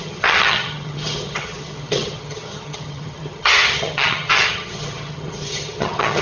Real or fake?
fake